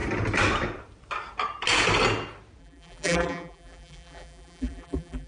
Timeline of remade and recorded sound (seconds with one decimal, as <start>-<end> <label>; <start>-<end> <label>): 0.0-2.6 recorded; 2.6-5.3 remade